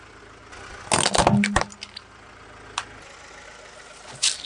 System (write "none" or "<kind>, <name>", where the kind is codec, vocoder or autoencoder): none